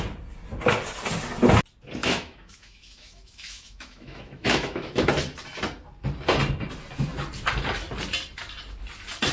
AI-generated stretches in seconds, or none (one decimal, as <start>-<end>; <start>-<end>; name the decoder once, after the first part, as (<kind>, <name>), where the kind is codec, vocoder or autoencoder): 2.0-5.0 (autoencoder, DAC-VAE)

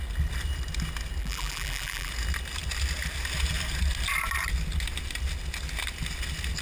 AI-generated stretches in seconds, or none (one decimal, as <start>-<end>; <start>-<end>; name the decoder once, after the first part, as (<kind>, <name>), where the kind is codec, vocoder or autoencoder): 1.2-2.1 (vocoder, BigVGAN v2)